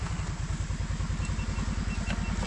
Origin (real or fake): real